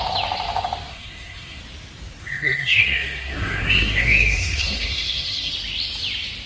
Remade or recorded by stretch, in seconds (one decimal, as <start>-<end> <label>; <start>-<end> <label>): 0.0-0.9 recorded; 0.9-1.6 remade; 1.6-2.2 recorded; 2.2-5.5 remade; 5.5-6.5 recorded

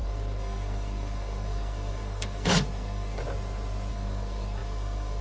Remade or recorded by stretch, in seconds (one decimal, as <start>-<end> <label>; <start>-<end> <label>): 0.0-3.2 remade; 3.2-3.9 recorded; 3.9-5.2 remade

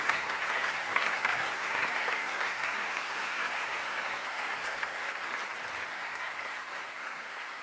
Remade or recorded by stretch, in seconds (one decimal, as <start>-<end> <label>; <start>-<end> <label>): 0.0-5.3 remade; 5.3-5.9 recorded; 5.9-7.6 remade

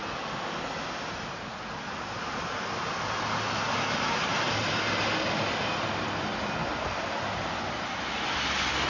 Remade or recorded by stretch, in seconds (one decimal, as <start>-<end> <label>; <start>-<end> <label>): 0.0-8.9 recorded

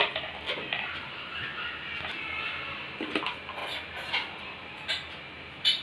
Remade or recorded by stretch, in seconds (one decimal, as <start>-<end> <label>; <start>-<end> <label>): 0.0-5.8 recorded